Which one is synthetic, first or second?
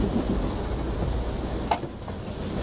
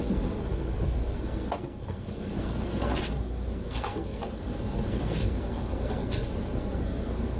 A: second